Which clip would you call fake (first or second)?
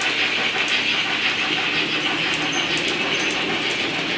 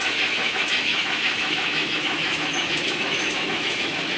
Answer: second